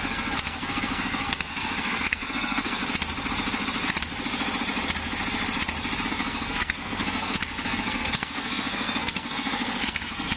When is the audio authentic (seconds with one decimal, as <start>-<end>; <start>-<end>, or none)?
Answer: 2.8-6.1